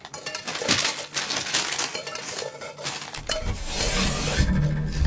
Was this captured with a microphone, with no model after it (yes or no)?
yes